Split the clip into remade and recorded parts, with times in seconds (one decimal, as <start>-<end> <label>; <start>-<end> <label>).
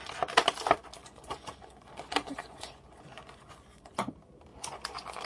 0.0-1.0 recorded; 1.0-4.1 remade; 4.1-4.5 recorded; 4.5-5.2 remade